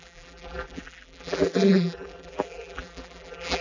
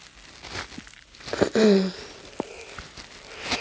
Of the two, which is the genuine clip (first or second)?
second